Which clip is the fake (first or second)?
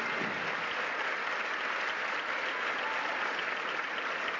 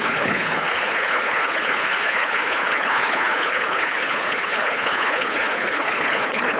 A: second